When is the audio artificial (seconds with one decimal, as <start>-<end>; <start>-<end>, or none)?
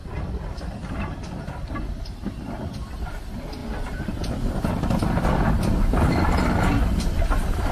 0.0-2.9; 3.6-4.7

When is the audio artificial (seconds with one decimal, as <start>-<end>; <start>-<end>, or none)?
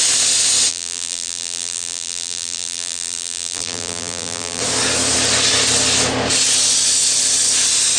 0.7-4.6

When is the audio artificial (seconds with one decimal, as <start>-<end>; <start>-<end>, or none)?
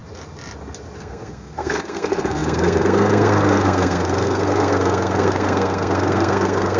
1.0-6.8